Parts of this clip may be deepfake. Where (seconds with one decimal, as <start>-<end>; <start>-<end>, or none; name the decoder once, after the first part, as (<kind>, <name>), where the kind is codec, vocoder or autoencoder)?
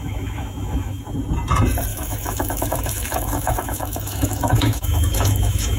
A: 0.0-1.0 (autoencoder, DAC-VAE); 1.9-5.8